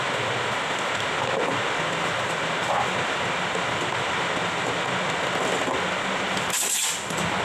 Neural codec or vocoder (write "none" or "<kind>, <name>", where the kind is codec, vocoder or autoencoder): none